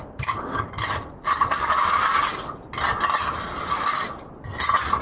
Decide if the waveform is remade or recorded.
recorded